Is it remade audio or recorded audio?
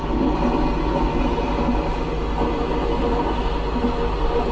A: recorded